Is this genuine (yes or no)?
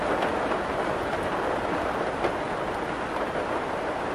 yes